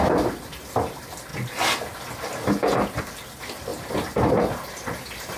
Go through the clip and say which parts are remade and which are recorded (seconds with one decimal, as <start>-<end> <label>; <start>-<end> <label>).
0.0-5.4 recorded